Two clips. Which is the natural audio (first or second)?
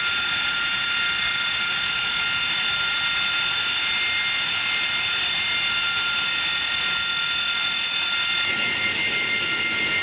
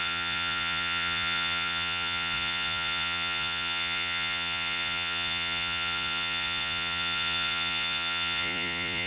first